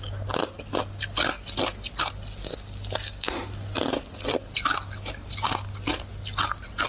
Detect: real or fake real